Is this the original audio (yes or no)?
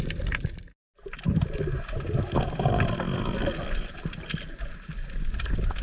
yes